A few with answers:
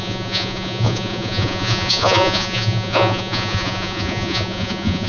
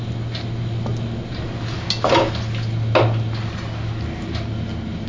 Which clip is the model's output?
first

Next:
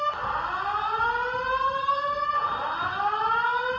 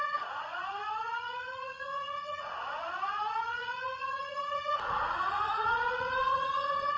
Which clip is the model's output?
second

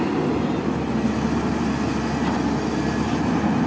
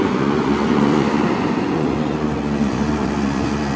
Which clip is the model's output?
second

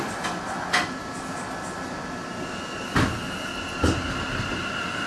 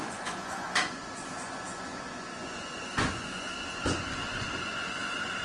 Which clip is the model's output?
second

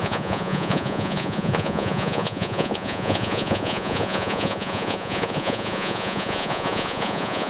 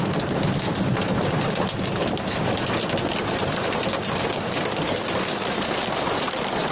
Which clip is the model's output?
first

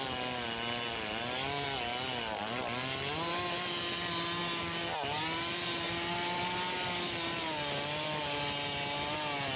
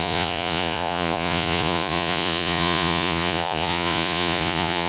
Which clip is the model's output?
second